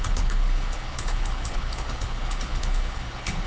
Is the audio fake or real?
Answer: fake